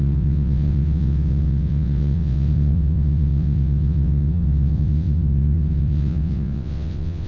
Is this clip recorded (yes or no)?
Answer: no